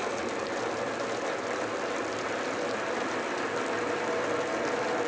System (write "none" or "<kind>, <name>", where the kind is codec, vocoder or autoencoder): none